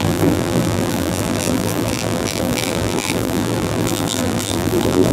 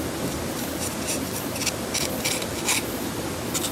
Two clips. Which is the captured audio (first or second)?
second